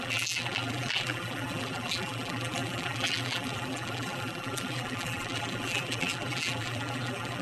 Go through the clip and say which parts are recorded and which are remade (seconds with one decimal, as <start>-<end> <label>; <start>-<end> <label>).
0.0-7.4 remade